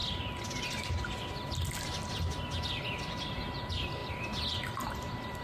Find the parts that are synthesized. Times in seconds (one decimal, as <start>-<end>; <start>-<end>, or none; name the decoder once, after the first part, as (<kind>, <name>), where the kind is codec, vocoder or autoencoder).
3.2-5.4 (vocoder, BigVGAN v2)